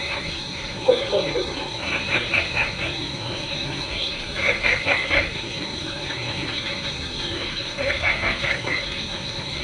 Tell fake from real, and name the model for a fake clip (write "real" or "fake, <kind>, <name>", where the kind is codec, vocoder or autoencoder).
fake, codec, SNAC